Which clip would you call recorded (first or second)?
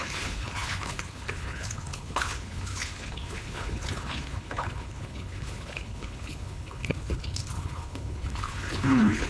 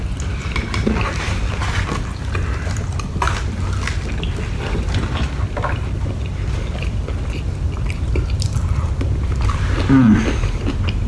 second